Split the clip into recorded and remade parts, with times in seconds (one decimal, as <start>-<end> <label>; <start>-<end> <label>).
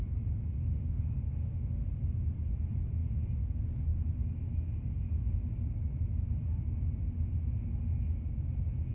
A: 0.0-0.6 recorded; 0.6-1.7 remade; 1.7-8.9 recorded